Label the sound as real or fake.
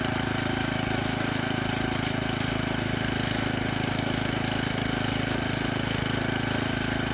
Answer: real